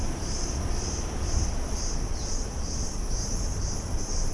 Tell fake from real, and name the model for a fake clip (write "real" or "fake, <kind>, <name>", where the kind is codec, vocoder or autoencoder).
fake, vocoder, BigVGAN v2